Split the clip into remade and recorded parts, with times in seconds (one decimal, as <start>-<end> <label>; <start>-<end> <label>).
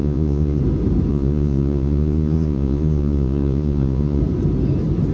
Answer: 0.0-0.6 remade; 0.6-1.1 recorded; 1.1-4.2 remade; 4.2-5.1 recorded